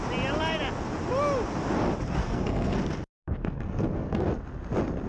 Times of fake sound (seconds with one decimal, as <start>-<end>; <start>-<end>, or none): 2.2-2.8; 3.4-4.3